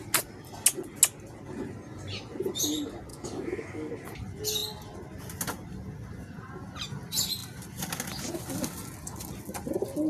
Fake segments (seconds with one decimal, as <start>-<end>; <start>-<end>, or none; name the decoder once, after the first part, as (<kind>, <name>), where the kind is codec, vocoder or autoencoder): 3.1-3.9 (codec, DAC)